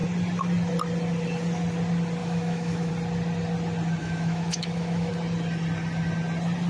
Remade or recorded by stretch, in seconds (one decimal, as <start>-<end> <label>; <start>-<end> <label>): 0.0-2.2 recorded; 2.2-2.9 remade; 2.9-4.0 recorded; 4.0-5.1 remade; 5.1-6.7 recorded